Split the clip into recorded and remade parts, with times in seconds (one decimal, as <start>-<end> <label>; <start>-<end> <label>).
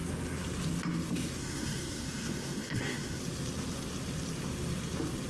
0.0-1.4 recorded; 1.4-3.2 remade; 3.2-5.3 recorded